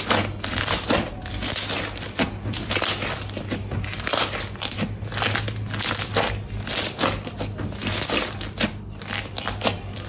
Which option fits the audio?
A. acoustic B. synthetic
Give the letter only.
A